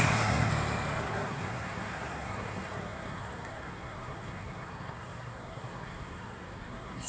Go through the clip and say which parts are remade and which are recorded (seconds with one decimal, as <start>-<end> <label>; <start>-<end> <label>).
0.0-0.5 remade; 0.5-1.0 recorded; 1.0-7.1 remade